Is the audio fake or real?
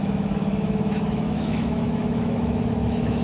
fake